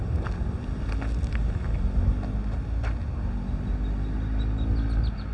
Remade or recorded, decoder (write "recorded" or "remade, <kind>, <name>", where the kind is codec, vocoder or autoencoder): recorded